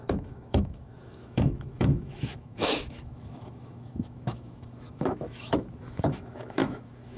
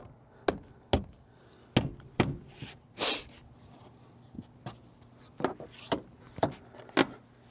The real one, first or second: second